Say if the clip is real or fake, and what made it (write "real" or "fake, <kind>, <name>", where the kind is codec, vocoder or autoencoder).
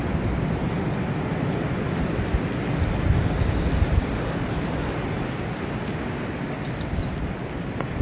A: real